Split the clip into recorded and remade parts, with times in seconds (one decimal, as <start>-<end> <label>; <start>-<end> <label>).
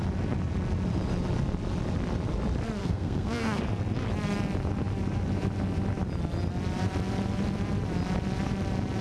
0.0-2.8 recorded; 2.8-3.6 remade; 3.6-9.0 recorded